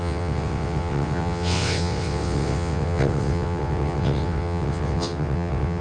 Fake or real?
fake